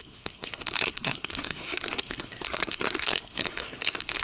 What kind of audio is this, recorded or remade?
remade